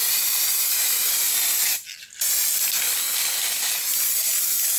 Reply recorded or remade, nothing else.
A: recorded